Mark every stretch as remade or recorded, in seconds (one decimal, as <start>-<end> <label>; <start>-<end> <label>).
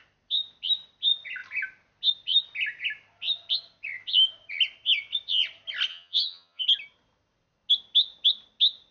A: 0.0-5.9 recorded; 5.9-6.6 remade; 6.6-8.9 recorded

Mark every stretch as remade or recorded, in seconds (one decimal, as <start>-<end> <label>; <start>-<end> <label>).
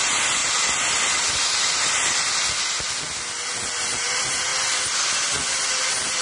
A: 0.0-0.4 remade; 0.4-4.1 recorded; 4.1-4.5 remade; 4.5-5.4 recorded; 5.4-6.2 remade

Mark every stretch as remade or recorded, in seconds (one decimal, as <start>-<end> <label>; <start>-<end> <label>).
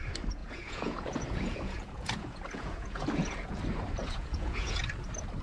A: 0.0-0.4 recorded; 0.4-3.6 remade; 3.6-4.0 recorded; 4.0-4.8 remade; 4.8-5.4 recorded